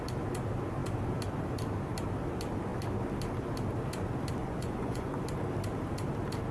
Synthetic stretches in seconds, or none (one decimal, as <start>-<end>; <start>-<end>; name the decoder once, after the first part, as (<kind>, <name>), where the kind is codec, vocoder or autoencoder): 4.4-5.1 (vocoder, Vocos)